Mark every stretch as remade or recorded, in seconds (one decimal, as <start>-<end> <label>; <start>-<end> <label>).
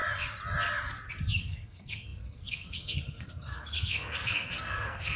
0.0-1.4 recorded; 1.4-5.2 remade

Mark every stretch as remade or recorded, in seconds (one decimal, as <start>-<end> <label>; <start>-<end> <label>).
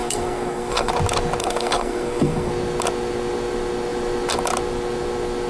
0.0-0.9 remade; 0.9-1.4 recorded; 1.4-2.5 remade; 2.5-5.5 recorded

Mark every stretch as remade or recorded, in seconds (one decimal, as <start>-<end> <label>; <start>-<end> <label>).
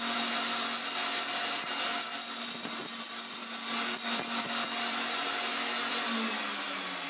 0.0-7.1 recorded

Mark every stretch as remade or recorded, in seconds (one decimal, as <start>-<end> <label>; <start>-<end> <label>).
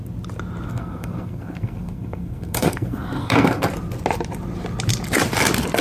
0.0-0.7 recorded; 0.7-3.7 remade; 3.7-5.8 recorded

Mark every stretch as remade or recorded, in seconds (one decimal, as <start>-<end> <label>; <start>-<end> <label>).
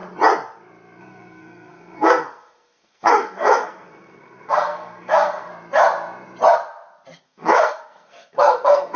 0.0-1.0 recorded; 1.0-5.5 remade; 5.5-7.2 recorded; 7.2-9.0 remade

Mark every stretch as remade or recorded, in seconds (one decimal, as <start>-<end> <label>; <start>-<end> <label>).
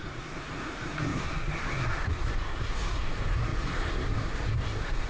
0.0-5.1 remade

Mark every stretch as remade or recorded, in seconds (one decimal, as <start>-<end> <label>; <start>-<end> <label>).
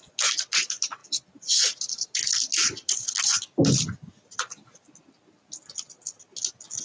0.0-6.8 recorded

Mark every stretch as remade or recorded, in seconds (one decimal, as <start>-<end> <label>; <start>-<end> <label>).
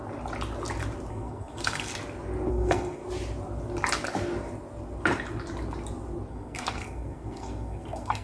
0.0-1.1 recorded; 1.1-1.9 remade; 1.9-2.5 recorded; 2.5-3.0 remade; 3.0-6.3 recorded; 6.3-8.2 remade